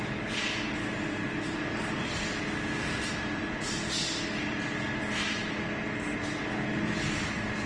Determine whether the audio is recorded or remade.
recorded